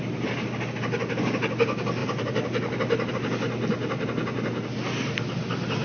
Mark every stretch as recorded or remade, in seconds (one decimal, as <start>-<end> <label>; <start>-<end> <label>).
0.0-5.8 recorded